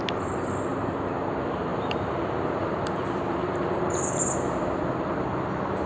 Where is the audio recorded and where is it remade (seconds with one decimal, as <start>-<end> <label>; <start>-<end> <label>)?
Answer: 0.0-1.7 recorded; 1.7-4.1 remade; 4.1-5.9 recorded